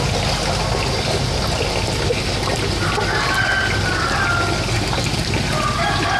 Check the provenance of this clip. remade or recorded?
recorded